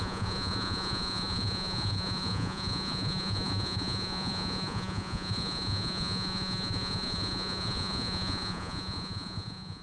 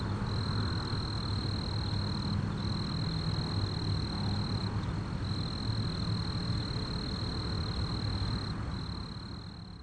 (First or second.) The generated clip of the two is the first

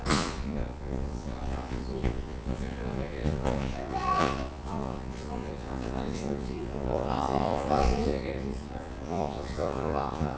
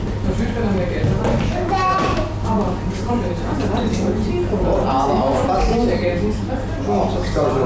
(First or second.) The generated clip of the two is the first